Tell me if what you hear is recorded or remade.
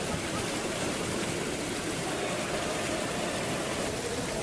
recorded